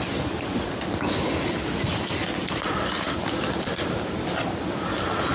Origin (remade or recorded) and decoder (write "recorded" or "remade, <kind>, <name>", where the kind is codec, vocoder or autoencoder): recorded